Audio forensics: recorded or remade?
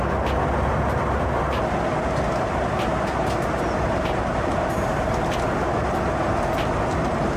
recorded